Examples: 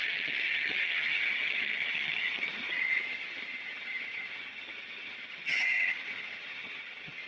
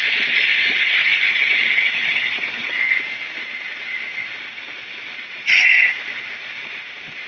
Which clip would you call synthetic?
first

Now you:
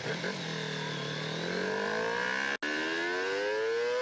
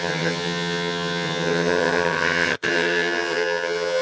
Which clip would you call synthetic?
second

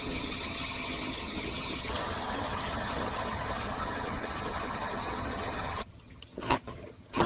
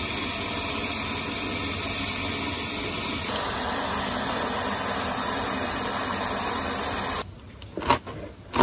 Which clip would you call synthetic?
first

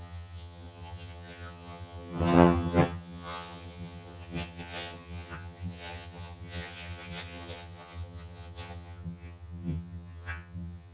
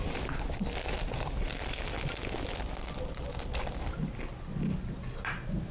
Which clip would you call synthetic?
first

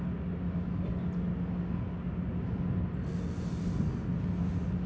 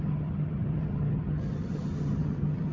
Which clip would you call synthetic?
second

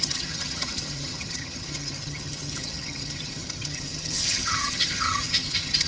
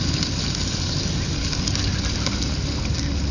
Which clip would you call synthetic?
first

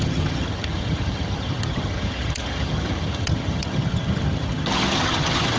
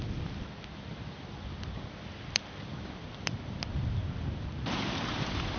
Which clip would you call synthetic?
first